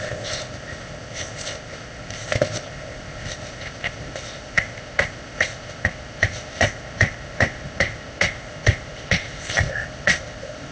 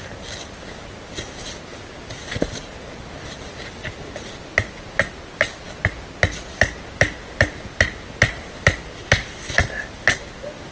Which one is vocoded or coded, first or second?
first